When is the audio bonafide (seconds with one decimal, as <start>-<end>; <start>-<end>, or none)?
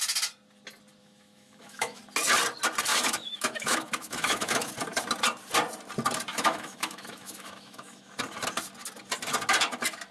0.0-1.0; 2.0-2.9; 4.7-6.3; 8.2-10.1